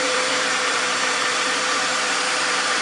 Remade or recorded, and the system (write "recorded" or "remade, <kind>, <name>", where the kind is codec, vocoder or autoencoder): remade, vocoder, BigVGAN v2